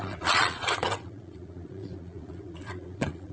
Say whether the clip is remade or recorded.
remade